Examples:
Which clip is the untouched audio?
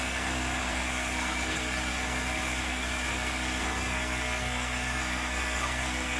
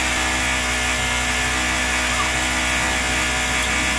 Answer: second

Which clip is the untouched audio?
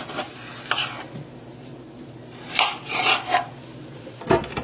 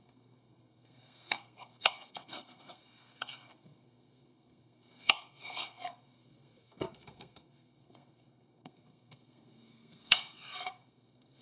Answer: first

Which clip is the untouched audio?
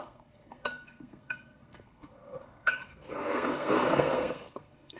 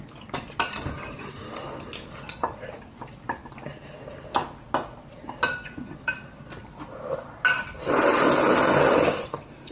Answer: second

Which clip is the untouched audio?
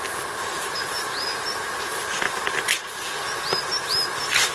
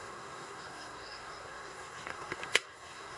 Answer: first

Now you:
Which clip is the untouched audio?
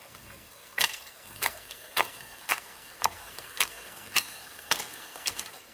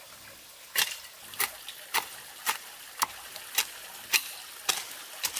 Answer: second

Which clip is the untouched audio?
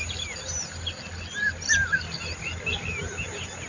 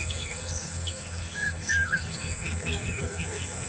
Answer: first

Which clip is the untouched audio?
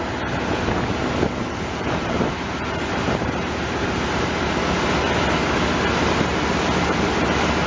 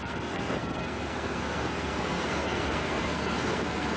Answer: first